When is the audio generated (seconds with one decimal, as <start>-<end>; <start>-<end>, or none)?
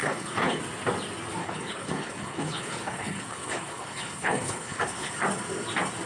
0.0-0.6; 1.4-5.1